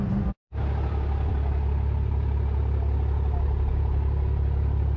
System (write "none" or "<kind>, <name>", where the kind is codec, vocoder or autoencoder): none